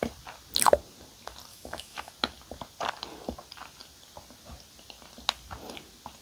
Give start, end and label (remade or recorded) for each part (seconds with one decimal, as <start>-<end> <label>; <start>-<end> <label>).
0.0-1.5 recorded; 1.5-2.1 remade; 2.1-6.2 recorded